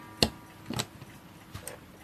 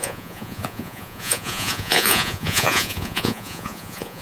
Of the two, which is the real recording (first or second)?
first